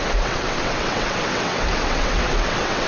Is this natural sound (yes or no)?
no